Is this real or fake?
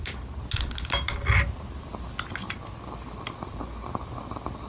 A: real